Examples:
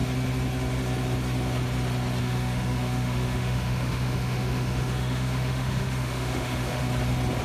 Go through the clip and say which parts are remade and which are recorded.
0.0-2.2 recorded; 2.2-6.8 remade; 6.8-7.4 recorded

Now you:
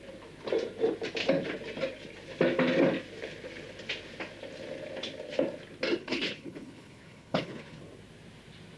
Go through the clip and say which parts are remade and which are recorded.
0.0-6.0 recorded; 6.0-7.8 remade; 7.8-8.8 recorded

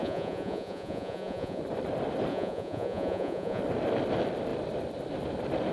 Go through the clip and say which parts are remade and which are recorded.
0.0-1.6 remade; 1.6-2.3 recorded; 2.3-3.6 remade; 3.6-5.7 recorded

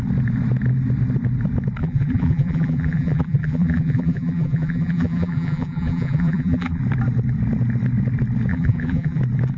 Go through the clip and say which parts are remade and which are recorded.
0.0-1.8 recorded; 1.8-6.8 remade; 6.8-8.5 recorded; 8.5-9.2 remade; 9.2-9.6 recorded

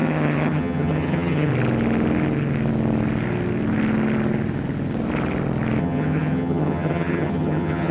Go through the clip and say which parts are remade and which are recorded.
0.0-1.5 remade; 1.5-5.8 recorded; 5.8-7.9 remade

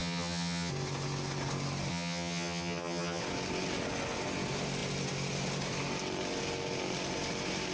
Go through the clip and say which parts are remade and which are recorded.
0.0-0.7 remade; 0.7-1.9 recorded; 1.9-3.2 remade; 3.2-7.7 recorded

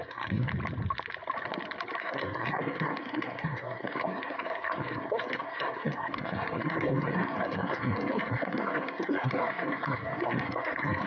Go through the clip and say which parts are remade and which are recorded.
0.0-0.5 remade; 0.5-2.0 recorded; 2.0-11.1 remade